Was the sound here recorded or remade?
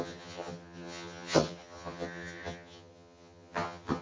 remade